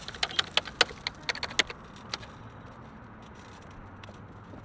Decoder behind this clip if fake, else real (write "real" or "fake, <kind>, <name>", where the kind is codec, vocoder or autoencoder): real